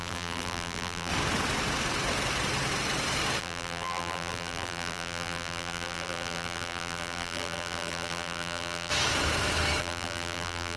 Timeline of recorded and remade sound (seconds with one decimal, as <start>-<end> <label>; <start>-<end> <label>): 0.0-1.1 remade; 1.1-3.4 recorded; 3.4-8.9 remade; 8.9-9.8 recorded; 9.8-10.8 remade